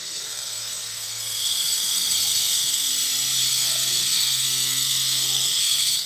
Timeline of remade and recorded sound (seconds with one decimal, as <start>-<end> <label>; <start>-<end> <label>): 0.0-2.9 remade; 2.9-3.5 recorded; 3.5-6.1 remade